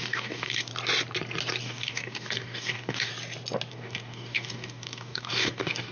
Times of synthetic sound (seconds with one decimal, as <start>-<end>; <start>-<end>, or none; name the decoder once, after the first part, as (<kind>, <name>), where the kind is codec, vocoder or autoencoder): 0.0-0.7 (codec, DAC); 1.6-3.1; 3.7-5.9